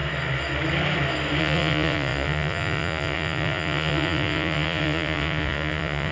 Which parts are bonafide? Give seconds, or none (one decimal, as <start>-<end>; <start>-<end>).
0.0-1.4